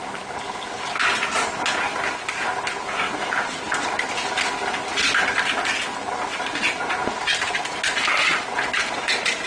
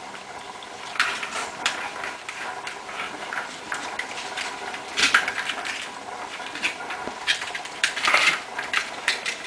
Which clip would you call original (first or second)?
first